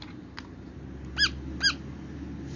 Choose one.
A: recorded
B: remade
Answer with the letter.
A